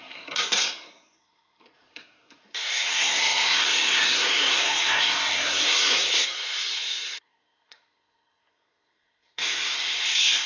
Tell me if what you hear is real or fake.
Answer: fake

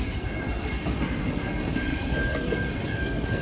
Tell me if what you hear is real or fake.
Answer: fake